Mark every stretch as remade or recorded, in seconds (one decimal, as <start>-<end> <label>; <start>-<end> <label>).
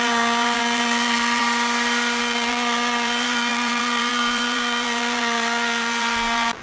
0.0-1.4 remade; 1.4-2.2 recorded; 2.2-6.6 remade